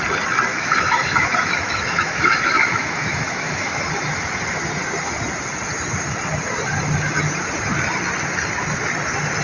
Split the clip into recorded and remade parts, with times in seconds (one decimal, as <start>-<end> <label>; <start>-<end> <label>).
0.0-0.5 recorded; 0.5-3.8 remade; 3.8-9.4 recorded